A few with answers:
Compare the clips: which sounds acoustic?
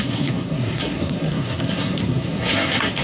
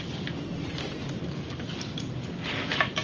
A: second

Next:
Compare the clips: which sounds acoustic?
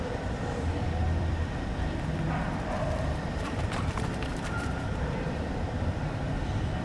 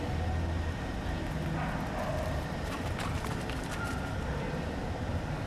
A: second